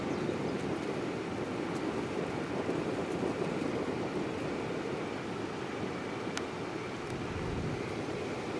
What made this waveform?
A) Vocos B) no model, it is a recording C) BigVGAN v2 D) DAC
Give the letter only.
B